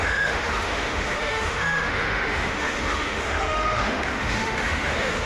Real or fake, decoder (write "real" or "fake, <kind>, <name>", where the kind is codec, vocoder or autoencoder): fake, autoencoder, DAC-VAE